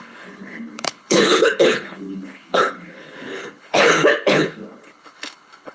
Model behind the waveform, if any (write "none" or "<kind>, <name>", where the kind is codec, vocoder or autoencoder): codec, HILCodec